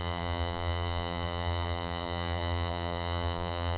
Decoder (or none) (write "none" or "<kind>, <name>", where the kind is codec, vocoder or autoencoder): vocoder, BigVGAN v2